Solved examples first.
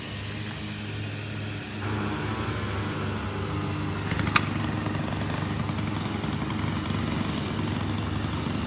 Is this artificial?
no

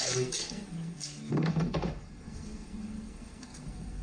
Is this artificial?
yes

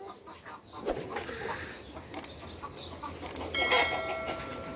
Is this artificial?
no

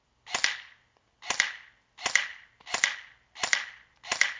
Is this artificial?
no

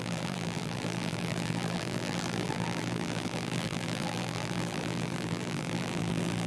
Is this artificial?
yes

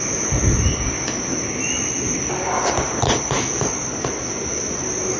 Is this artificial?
no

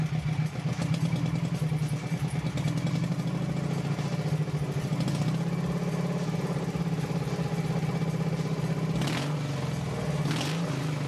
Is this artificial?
no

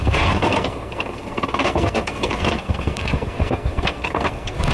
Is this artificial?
yes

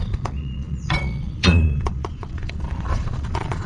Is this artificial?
yes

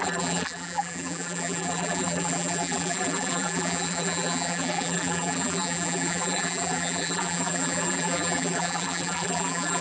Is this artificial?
yes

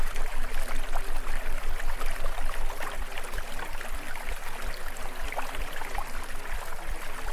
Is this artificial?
no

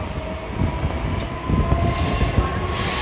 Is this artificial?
no